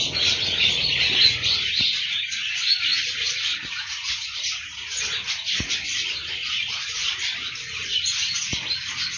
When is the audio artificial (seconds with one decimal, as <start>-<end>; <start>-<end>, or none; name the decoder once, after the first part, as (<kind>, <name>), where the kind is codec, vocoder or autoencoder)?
3.5-5.0 (vocoder, Vocos)